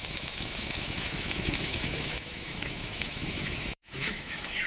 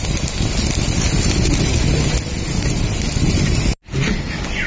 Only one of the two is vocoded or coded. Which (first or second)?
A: first